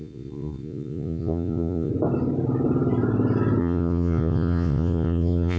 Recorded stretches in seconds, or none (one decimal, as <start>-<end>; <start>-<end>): 1.9-3.6